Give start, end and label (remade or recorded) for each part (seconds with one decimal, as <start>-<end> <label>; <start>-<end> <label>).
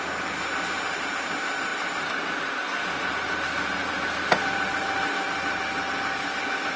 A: 0.0-1.7 recorded; 1.7-3.1 remade; 3.1-3.8 recorded; 3.8-6.8 remade